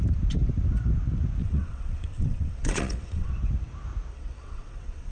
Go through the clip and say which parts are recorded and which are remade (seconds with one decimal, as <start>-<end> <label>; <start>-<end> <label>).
0.0-1.4 recorded; 1.4-3.3 remade; 3.3-4.1 recorded; 4.1-5.1 remade